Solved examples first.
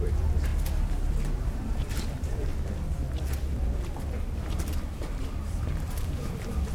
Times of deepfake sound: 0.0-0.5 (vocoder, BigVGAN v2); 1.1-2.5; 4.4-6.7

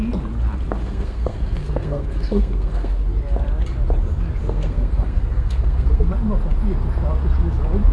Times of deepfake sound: 0.8-2.9 (codec, SNAC); 4.4-6.1

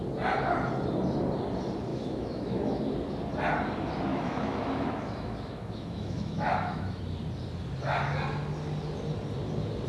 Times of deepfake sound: 1.9-2.8 (autoencoder, DAC-VAE); 4.1-7.0

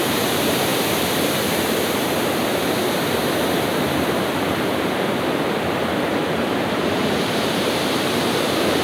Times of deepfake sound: 0.0-0.7 (vocoder, BigVGAN v2); 1.5-8.8